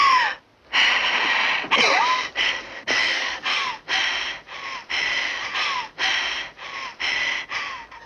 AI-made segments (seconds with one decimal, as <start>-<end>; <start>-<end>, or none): 3.0-3.7